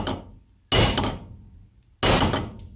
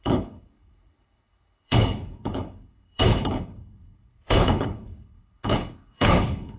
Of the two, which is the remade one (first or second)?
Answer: second